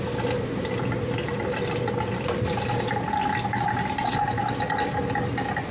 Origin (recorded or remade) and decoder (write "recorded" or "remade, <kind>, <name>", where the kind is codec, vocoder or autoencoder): recorded